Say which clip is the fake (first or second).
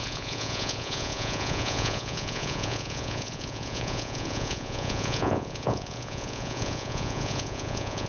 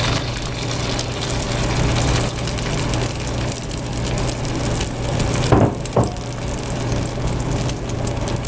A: first